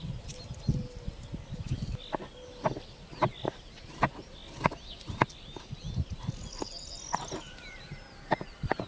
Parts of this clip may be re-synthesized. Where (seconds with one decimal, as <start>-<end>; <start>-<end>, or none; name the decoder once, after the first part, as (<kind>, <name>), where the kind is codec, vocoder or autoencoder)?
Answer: none